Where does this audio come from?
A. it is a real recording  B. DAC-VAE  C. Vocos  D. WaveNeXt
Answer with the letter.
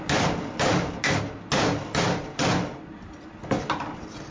A